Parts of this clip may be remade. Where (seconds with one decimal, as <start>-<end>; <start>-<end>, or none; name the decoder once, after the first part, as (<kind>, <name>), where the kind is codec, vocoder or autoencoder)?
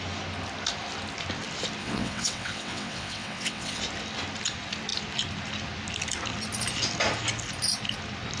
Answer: 1.8-3.8 (vocoder, WaveNeXt)